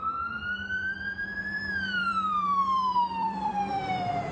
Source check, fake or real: fake